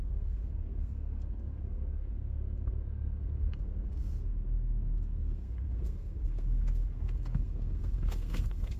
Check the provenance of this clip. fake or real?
fake